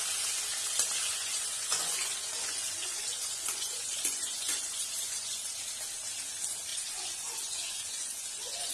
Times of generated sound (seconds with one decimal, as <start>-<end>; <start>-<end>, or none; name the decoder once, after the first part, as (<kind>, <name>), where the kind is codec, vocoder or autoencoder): 1.1-5.5 (vocoder, Vocos); 6.7-8.7